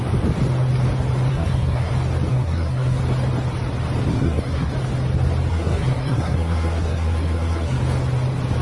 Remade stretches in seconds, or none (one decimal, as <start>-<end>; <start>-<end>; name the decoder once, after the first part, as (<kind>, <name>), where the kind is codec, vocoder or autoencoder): 1.3-1.9 (codec, SNAC); 2.3-3.0; 4.1-4.7; 5.5-7.8